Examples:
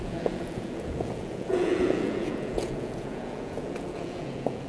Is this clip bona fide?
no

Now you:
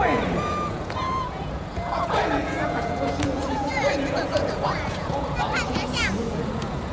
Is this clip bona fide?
no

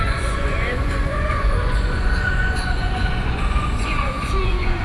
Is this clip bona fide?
no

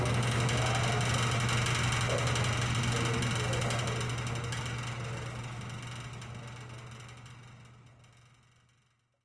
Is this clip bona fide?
yes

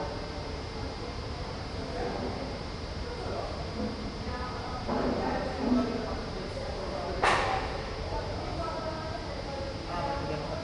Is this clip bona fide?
yes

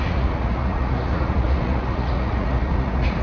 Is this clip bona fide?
no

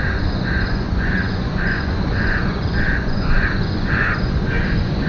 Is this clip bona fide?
no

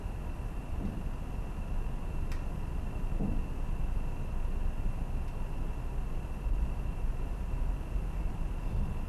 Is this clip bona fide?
yes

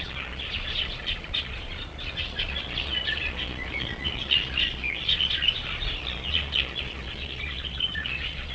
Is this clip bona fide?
no